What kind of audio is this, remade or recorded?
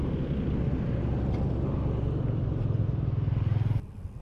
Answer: recorded